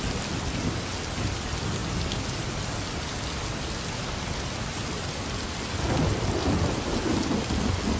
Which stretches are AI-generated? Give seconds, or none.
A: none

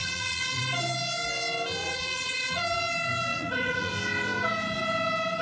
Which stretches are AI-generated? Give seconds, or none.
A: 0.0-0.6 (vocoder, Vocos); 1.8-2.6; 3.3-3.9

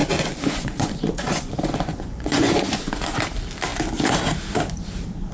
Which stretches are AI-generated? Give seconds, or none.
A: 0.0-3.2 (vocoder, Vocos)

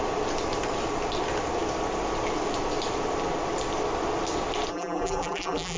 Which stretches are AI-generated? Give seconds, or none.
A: 4.7-5.8 (vocoder, BigVGAN v2)

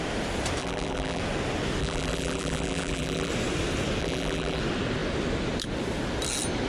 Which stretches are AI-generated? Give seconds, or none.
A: 0.6-1.2 (vocoder, BigVGAN v2); 1.8-3.3; 4.0-4.6

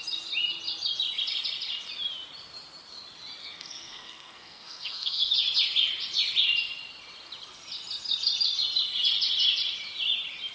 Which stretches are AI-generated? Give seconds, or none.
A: 3.4-5.3 (codec, SNAC)